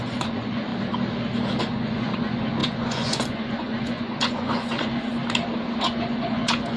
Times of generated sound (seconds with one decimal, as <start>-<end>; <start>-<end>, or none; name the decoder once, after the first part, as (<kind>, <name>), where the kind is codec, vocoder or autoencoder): 0.0-0.7 (vocoder, Vocos); 1.6-5.2; 5.8-6.8